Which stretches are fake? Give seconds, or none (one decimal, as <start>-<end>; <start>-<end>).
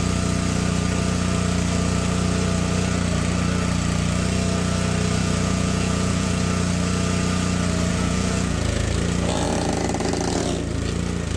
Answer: 5.2-6.3; 7.9-8.9